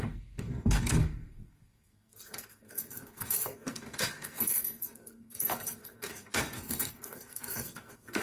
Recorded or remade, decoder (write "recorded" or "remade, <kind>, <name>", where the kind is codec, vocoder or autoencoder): remade, codec, SNAC